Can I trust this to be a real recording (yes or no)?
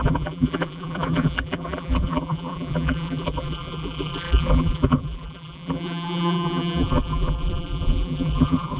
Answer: no